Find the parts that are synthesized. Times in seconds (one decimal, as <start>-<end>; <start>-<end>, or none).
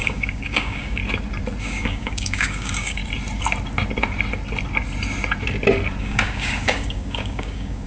0.0-1.0; 1.6-3.0; 6.0-7.9